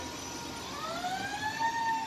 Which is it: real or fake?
real